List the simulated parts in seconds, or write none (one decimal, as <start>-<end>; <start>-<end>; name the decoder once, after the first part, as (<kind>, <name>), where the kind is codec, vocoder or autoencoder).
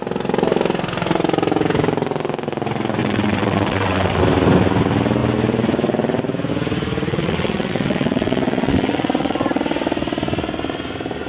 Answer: 3.0-4.2 (vocoder, WaveNeXt); 7.1-9.6